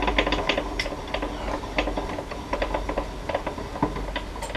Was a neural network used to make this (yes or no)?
no